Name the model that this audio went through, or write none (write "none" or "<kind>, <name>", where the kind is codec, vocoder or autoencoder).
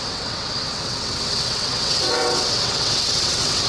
vocoder, WaveNeXt